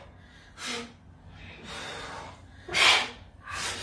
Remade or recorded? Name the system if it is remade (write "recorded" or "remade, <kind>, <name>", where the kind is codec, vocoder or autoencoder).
recorded